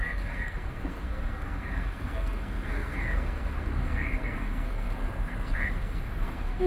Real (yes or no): no